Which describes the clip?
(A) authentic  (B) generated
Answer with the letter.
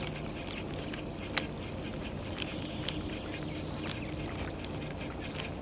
A